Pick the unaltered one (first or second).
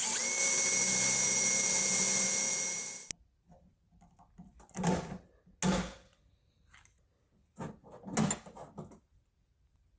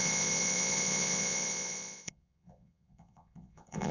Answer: first